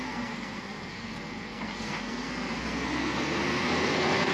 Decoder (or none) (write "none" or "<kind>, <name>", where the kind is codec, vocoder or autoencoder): codec, SNAC